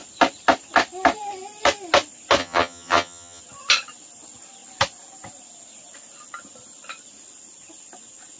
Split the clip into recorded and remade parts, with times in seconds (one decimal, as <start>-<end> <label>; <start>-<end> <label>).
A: 0.0-2.4 recorded; 2.4-3.4 remade; 3.4-8.4 recorded